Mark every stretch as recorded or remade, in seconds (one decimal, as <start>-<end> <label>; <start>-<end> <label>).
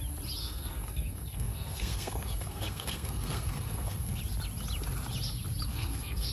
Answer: 0.0-0.4 recorded; 0.4-4.2 remade; 4.2-5.7 recorded; 5.7-6.3 remade